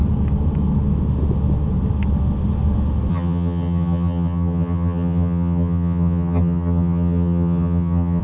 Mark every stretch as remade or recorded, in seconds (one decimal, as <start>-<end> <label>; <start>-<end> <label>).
0.0-3.1 recorded; 3.1-8.2 remade